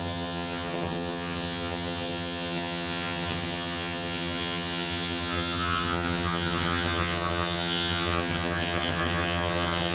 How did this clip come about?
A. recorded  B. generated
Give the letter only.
B